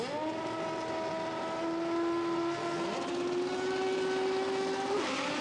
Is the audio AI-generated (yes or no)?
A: no